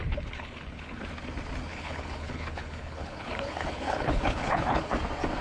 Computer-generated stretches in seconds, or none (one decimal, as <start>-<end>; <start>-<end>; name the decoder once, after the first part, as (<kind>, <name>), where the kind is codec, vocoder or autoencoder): 0.0-1.0 (codec, HILCodec); 1.7-4.9